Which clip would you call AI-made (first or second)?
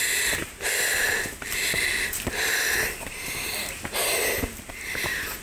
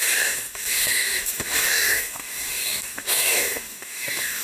second